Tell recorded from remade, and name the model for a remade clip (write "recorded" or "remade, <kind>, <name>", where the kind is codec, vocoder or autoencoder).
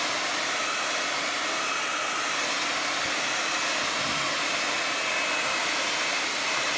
recorded